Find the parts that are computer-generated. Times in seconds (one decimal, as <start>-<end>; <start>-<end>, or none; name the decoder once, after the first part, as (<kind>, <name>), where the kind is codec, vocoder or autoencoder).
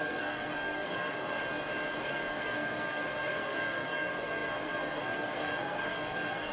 0.0-1.4 (codec, SNAC); 2.0-6.5